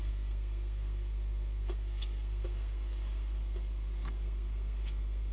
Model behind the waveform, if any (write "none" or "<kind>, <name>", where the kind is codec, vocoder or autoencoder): codec, SNAC